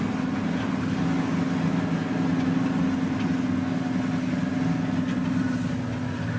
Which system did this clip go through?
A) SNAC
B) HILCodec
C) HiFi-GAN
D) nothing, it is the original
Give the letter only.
D